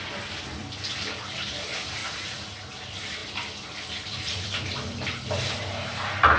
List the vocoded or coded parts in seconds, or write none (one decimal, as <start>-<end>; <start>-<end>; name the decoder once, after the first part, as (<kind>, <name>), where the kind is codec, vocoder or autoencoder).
2.0-2.6 (vocoder, Vocos)